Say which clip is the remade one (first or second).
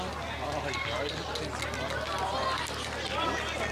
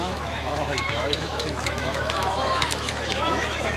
second